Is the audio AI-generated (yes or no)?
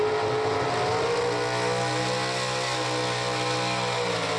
no